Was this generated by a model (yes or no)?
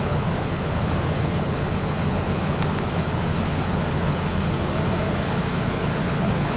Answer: yes